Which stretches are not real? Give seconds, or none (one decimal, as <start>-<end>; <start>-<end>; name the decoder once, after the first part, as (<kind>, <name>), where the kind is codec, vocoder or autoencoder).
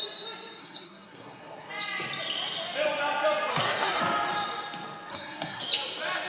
0.6-1.7 (codec, SNAC); 3.5-4.0; 5.1-5.6